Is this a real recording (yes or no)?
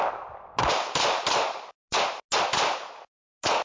yes